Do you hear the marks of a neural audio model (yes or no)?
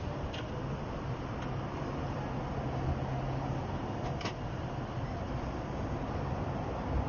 no